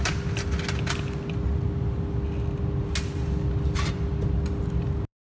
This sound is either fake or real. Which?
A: real